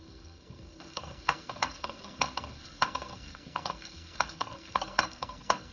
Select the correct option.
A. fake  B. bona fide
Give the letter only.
A